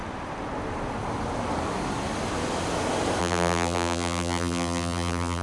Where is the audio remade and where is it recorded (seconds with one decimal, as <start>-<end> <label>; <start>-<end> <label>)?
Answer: 0.0-3.2 recorded; 3.2-5.4 remade